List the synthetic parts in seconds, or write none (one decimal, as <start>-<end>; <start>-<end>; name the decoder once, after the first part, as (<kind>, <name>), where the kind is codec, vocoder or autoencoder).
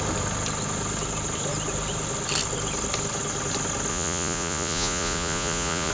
3.9-5.9 (vocoder, Vocos)